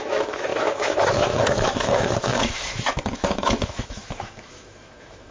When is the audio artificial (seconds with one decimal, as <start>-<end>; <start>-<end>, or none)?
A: 0.0-5.3